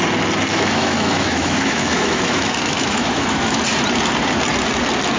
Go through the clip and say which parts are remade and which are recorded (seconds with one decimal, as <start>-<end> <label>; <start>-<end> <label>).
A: 0.0-0.5 recorded; 0.5-3.6 remade; 3.6-5.2 recorded